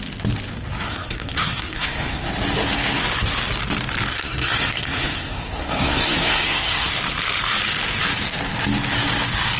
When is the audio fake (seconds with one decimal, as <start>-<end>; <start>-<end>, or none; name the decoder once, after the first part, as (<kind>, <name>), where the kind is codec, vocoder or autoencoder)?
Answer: 0.9-2.3 (codec, SNAC); 4.1-6.9